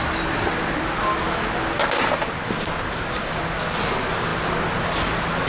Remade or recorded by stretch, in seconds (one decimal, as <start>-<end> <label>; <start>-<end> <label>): 0.0-5.5 recorded